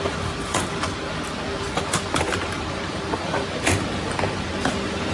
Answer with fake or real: real